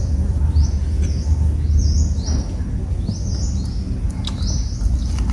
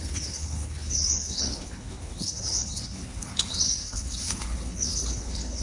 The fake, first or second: second